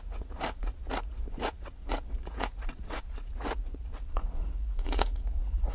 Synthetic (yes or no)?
yes